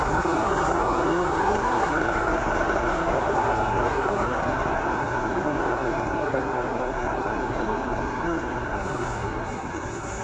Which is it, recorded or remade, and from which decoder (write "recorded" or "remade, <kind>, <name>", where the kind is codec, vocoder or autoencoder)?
remade, codec, SNAC